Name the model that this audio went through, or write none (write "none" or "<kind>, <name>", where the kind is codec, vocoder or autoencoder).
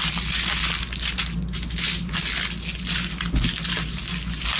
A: none